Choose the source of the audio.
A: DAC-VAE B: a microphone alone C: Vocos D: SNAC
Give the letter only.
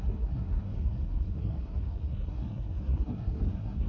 D